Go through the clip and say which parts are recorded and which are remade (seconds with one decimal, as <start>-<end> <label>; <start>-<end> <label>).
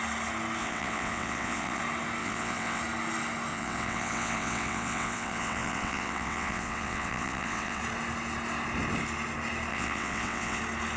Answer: 0.0-0.6 recorded; 0.6-1.8 remade; 1.8-2.2 recorded; 2.2-2.8 remade; 2.8-3.5 recorded; 3.5-7.8 remade; 7.8-9.7 recorded; 9.7-10.6 remade; 10.6-11.0 recorded